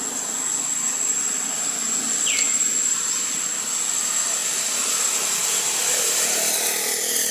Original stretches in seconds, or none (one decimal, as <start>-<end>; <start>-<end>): 0.0-7.3